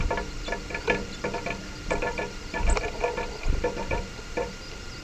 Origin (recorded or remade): recorded